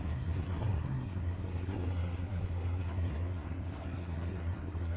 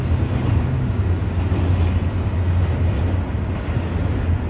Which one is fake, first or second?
first